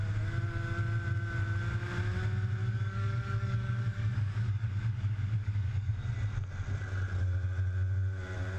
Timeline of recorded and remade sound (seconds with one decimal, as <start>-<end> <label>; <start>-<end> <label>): 0.0-2.6 recorded; 2.6-5.9 remade; 5.9-8.6 recorded